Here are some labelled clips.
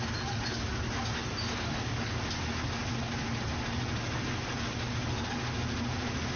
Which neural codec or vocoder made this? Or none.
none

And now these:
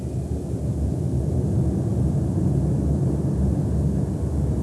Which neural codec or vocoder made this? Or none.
none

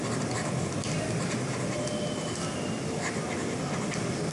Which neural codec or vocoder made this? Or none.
none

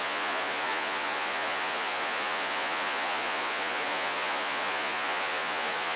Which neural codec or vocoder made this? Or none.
vocoder, Vocos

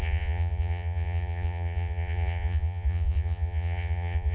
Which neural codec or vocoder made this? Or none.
vocoder, Vocos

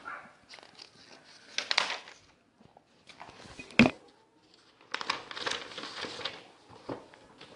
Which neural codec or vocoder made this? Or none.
none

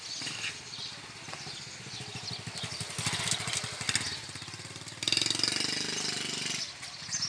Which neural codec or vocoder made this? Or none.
none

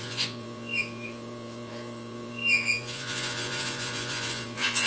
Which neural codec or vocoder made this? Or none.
vocoder, Vocos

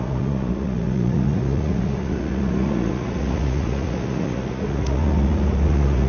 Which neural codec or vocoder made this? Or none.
vocoder, Vocos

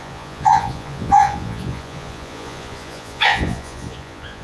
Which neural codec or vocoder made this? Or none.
vocoder, Vocos